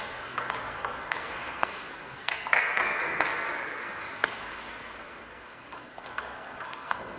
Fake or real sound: fake